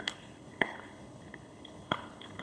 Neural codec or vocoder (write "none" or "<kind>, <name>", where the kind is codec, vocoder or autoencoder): codec, HILCodec